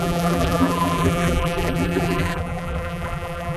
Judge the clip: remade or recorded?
remade